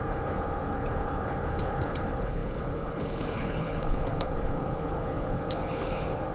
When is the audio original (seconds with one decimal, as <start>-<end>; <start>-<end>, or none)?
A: none